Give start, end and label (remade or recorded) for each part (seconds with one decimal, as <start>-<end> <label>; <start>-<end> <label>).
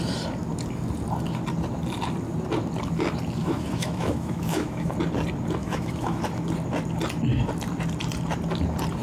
0.0-3.4 recorded; 3.4-4.9 remade; 4.9-5.6 recorded; 5.6-6.2 remade; 6.2-9.0 recorded